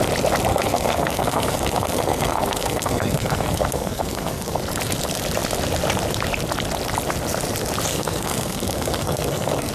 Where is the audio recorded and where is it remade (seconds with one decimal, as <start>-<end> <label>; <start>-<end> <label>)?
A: 0.0-0.5 recorded; 0.5-4.6 remade; 4.6-7.9 recorded; 7.9-9.7 remade